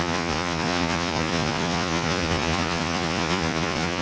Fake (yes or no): yes